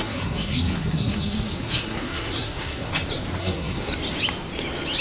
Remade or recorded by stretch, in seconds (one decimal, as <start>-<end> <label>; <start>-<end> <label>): 0.0-2.9 remade; 2.9-3.4 recorded; 3.4-3.9 remade; 3.9-5.0 recorded